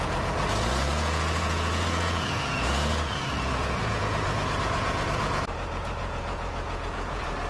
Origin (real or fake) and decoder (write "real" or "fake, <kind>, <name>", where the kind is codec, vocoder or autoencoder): fake, vocoder, Vocos